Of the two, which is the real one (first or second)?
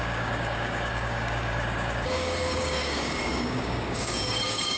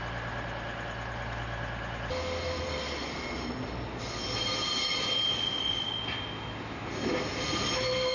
second